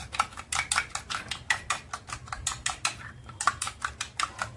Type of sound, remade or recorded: recorded